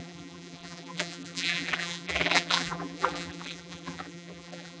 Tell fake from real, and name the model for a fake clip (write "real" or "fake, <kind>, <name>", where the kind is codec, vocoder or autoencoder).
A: fake, vocoder, BigVGAN v2